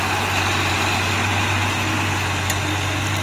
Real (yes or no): yes